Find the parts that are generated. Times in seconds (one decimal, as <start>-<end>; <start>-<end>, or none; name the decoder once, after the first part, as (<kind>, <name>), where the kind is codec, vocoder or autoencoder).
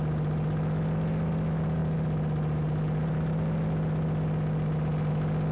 none